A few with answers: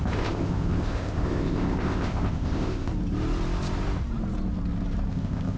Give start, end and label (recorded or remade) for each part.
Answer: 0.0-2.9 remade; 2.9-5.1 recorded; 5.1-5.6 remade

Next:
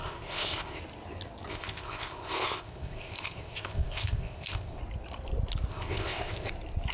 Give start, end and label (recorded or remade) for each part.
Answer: 0.0-0.8 remade; 0.8-1.5 recorded; 1.5-4.8 remade; 4.8-5.7 recorded; 5.7-6.5 remade; 6.5-6.9 recorded

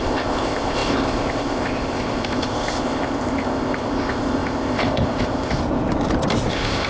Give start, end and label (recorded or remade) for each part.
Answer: 0.0-5.6 remade; 5.6-6.5 recorded; 6.5-6.9 remade

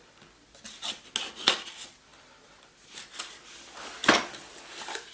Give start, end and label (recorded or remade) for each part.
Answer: 0.0-5.1 recorded

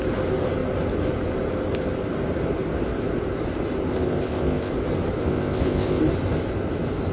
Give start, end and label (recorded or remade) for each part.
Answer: 0.0-3.9 recorded; 3.9-4.7 remade; 4.7-5.2 recorded; 5.2-6.0 remade; 6.0-7.1 recorded